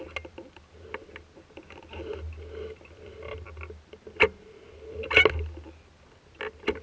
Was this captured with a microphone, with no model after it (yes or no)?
yes